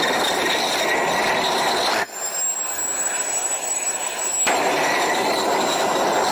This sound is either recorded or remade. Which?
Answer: recorded